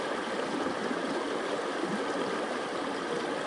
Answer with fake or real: real